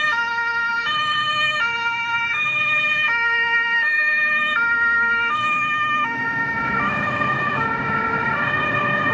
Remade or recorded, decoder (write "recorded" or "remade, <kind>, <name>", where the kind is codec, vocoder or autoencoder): remade, autoencoder, DAC-VAE